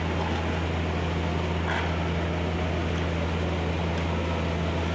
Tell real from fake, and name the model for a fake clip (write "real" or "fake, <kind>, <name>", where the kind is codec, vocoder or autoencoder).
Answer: real